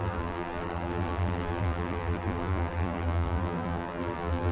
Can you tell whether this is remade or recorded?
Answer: remade